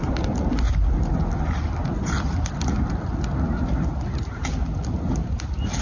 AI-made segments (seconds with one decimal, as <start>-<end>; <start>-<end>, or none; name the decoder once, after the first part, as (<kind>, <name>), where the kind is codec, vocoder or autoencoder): none

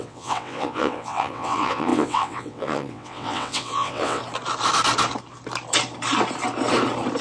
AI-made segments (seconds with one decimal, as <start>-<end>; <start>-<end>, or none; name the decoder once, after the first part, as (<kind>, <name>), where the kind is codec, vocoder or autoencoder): 0.0-4.2 (vocoder, WaveNeXt)

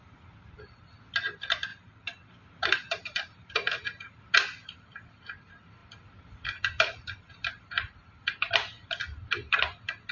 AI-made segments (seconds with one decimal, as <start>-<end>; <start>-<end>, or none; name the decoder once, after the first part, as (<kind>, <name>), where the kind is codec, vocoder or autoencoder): 1.7-4.2 (vocoder, BigVGAN v2); 5.8-8.5

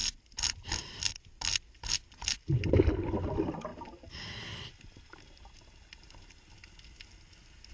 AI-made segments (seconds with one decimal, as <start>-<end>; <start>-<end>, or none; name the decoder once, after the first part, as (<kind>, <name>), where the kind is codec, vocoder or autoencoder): none

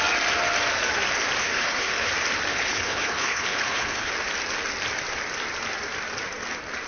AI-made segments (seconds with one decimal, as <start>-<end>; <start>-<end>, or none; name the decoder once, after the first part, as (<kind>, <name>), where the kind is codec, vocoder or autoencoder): 1.4-2.1 (codec, HILCodec); 2.5-4.1